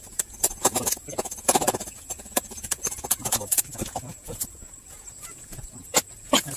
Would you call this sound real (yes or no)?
no